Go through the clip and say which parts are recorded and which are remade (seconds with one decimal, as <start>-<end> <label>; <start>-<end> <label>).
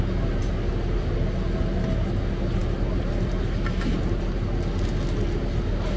0.0-6.0 recorded